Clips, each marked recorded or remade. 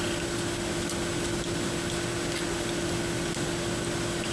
recorded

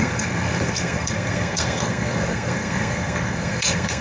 remade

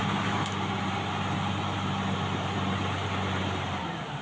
recorded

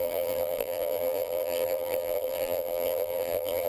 remade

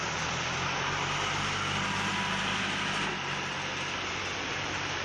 recorded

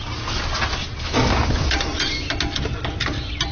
recorded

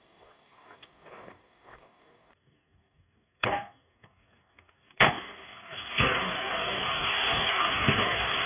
remade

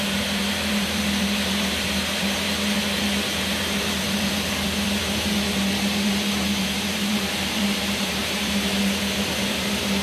remade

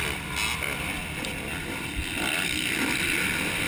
recorded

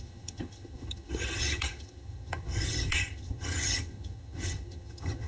remade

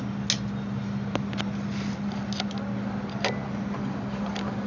recorded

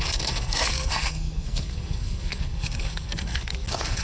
remade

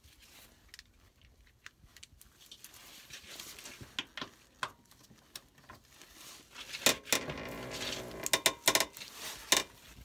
recorded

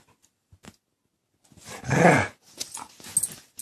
recorded